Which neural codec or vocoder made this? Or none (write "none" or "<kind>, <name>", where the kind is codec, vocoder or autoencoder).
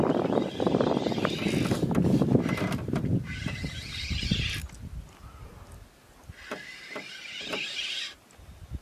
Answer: none